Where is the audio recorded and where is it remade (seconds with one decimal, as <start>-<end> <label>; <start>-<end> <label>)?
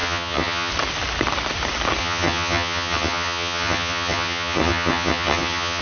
0.0-0.7 remade; 0.7-2.0 recorded; 2.0-5.8 remade